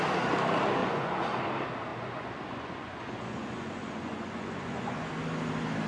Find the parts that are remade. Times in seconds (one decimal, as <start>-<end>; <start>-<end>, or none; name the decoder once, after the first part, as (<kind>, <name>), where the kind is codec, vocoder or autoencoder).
0.8-1.4 (vocoder, Vocos); 1.9-5.1